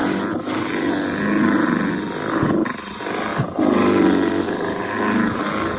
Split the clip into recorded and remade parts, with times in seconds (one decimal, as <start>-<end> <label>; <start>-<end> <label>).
0.0-0.9 remade; 0.9-3.3 recorded; 3.3-4.8 remade; 4.8-5.8 recorded